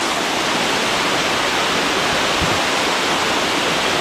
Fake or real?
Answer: real